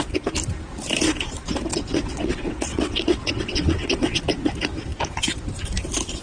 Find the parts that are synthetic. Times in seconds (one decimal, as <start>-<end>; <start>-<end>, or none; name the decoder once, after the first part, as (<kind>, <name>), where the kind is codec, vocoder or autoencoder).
1.7-4.2 (vocoder, WaveNeXt)